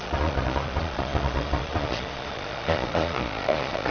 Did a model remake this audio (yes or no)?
yes